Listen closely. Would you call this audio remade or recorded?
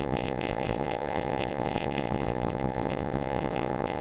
remade